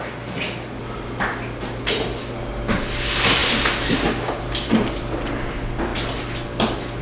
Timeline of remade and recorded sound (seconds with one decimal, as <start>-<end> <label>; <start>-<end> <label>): 0.0-7.0 recorded